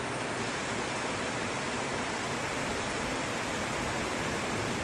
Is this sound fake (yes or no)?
no